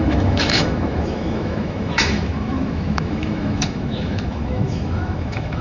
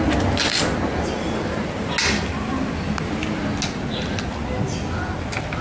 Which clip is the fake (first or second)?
first